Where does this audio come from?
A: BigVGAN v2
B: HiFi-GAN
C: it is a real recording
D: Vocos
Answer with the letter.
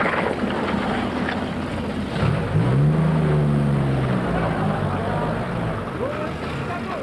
C